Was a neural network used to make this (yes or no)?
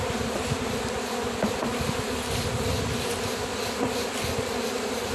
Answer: no